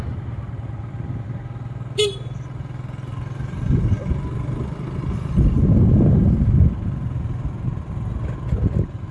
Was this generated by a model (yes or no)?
no